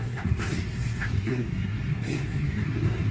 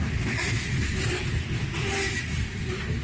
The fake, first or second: first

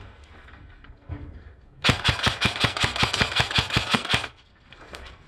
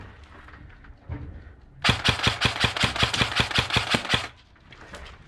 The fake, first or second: first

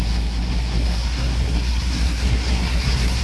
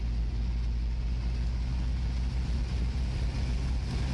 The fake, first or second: first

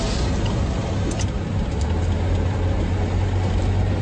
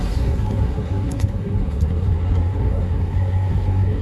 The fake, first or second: second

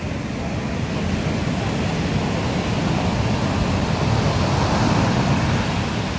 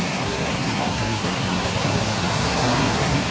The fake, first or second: second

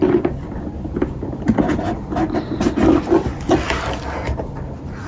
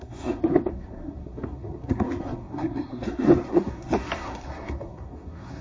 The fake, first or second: second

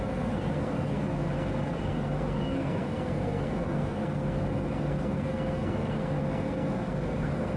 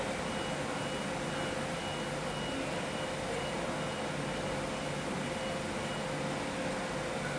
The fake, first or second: first